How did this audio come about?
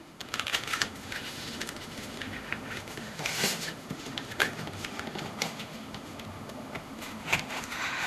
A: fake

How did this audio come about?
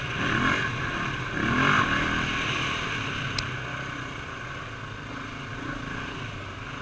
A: real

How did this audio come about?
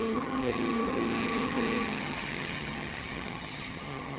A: fake